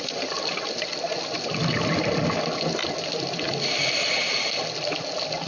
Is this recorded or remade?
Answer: recorded